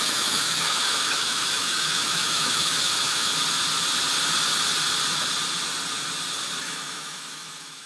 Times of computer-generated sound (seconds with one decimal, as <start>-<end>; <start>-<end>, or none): 0.0-3.3; 6.6-7.9